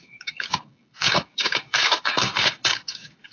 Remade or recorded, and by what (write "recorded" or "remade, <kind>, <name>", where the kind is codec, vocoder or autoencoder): remade, codec, DAC